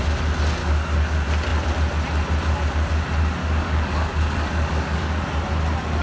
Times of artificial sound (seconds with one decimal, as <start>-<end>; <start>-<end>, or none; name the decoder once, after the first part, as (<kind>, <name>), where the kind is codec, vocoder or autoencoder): 0.6-1.1 (codec, DAC); 3.4-5.2